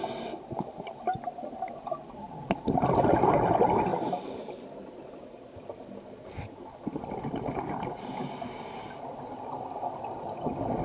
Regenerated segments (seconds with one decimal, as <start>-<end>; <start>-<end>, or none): 3.9-7.9

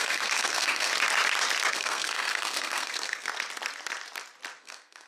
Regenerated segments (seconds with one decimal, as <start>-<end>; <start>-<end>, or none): 0.0-0.9; 1.7-3.3; 4.6-5.1

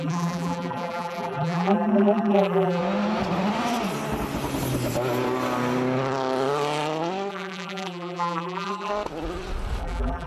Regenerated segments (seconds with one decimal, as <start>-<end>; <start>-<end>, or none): 0.0-2.8; 7.3-8.9; 9.8-10.3

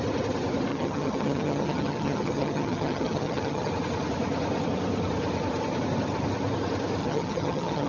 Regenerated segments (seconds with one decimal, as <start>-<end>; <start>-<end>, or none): 0.7-3.7; 7.0-7.9

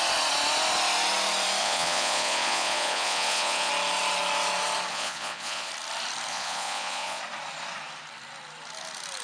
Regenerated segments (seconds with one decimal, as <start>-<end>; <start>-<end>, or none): 1.6-3.7; 4.9-5.7; 6.3-7.2